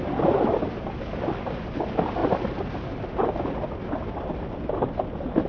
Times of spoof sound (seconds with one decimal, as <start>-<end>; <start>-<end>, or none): none